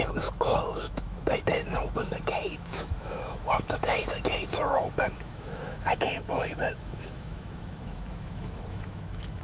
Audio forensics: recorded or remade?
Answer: remade